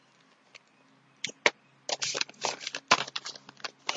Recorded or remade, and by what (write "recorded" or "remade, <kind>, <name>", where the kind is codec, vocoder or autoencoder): recorded